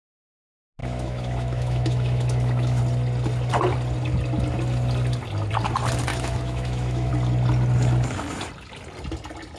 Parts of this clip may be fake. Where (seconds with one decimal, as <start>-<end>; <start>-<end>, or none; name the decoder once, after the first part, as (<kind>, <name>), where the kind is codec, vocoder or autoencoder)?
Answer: 0.8-2.8 (autoencoder, DAC-VAE); 6.1-7.1